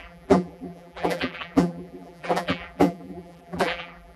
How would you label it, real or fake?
fake